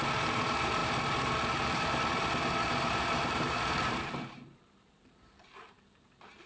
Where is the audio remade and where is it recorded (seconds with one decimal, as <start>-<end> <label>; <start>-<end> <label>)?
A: 0.0-6.5 remade